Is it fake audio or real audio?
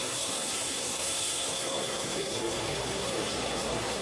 fake